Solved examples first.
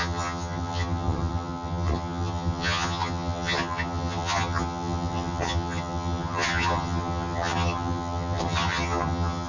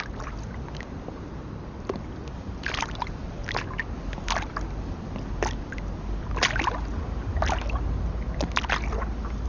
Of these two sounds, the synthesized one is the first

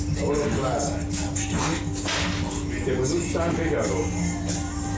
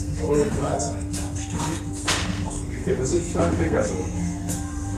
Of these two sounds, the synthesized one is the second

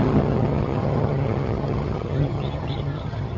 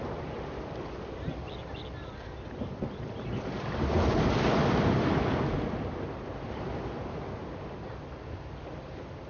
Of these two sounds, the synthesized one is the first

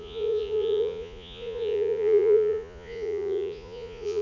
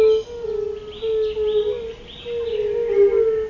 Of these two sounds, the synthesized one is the first